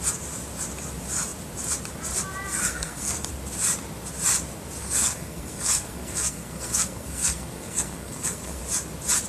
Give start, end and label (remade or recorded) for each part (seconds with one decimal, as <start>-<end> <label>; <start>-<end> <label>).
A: 0.0-2.5 recorded; 2.5-3.3 remade; 3.3-4.8 recorded; 4.8-8.6 remade; 8.6-9.3 recorded